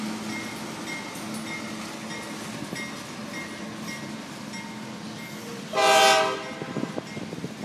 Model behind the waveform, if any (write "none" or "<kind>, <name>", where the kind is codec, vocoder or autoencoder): none